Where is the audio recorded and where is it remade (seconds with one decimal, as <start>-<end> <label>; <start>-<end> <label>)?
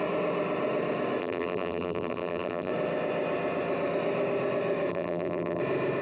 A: 0.0-1.2 recorded; 1.2-2.7 remade; 2.7-4.9 recorded; 4.9-5.6 remade; 5.6-6.0 recorded